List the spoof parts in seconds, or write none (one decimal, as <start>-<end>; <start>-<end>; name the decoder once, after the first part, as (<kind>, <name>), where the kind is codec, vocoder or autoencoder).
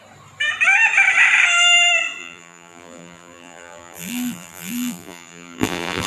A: 2.2-6.1 (vocoder, BigVGAN v2)